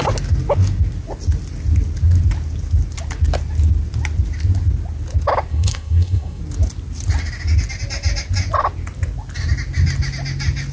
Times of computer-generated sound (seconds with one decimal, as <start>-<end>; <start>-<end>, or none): 5.5-6.4